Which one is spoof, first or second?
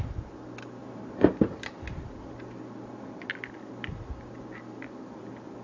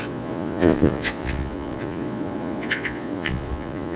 second